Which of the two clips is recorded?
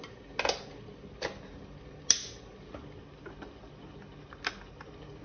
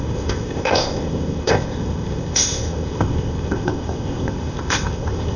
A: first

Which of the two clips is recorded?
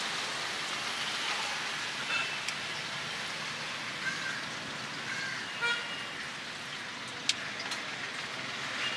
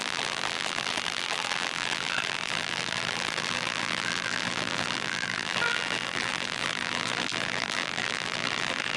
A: first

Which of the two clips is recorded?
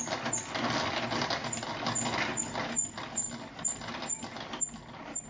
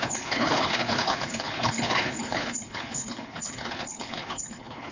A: first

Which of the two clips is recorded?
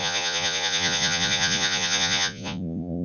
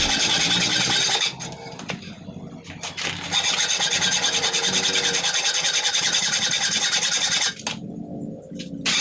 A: second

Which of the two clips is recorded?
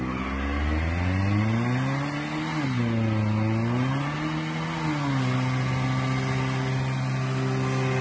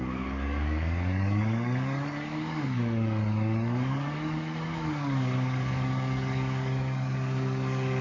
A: first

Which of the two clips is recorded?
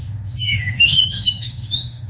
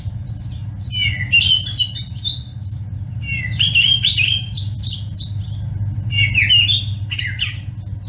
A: second